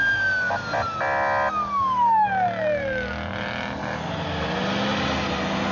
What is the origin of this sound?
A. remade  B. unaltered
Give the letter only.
B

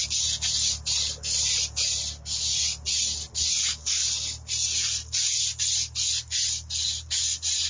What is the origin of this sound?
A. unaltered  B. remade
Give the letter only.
A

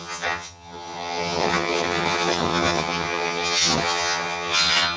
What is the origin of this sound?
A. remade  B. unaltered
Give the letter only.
A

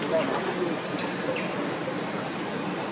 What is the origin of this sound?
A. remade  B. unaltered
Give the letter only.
B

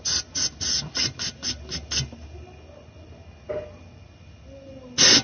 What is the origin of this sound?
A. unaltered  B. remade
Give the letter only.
A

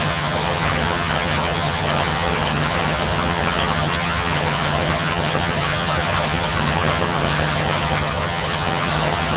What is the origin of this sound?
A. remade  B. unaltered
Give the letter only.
A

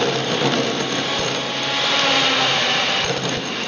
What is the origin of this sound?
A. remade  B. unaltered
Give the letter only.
B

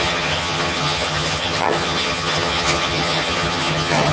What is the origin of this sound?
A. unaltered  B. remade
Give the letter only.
B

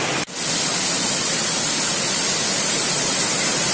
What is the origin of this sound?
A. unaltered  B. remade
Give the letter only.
A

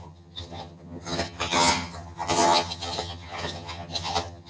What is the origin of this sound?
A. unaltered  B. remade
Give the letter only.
B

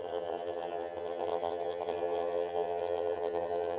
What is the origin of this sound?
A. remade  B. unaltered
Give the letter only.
A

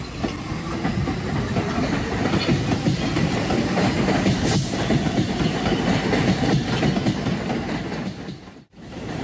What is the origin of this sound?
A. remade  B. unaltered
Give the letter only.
B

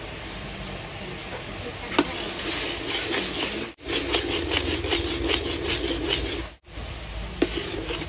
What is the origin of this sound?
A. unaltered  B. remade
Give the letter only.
A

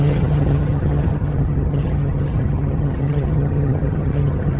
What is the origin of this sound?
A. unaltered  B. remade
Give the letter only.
B